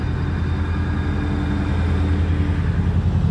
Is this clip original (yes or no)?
yes